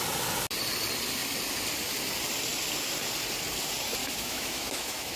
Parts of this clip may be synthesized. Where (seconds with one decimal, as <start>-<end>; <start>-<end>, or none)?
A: 4.0-5.2